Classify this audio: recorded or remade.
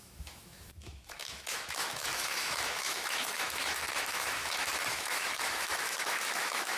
remade